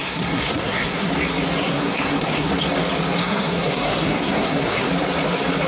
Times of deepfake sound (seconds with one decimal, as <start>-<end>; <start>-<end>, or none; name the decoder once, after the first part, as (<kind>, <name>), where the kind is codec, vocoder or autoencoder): 0.0-1.1 (codec, SNAC); 1.6-2.5; 3.2-4.9